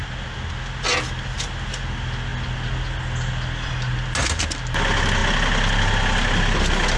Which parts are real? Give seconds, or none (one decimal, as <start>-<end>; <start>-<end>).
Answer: 0.0-7.0